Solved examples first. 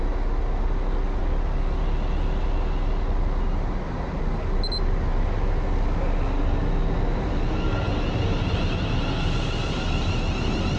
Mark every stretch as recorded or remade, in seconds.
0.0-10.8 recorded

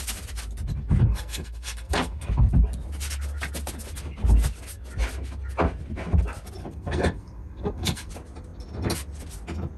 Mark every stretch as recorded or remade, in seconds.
0.0-1.0 recorded; 1.0-2.3 remade; 2.3-6.6 recorded; 6.6-8.1 remade; 8.1-9.8 recorded

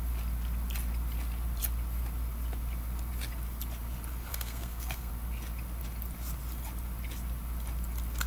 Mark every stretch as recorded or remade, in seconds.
0.0-4.3 recorded; 4.3-5.1 remade; 5.1-8.3 recorded

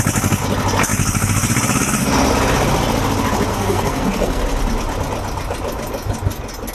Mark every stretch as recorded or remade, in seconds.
0.0-3.5 recorded; 3.5-4.4 remade; 4.4-6.7 recorded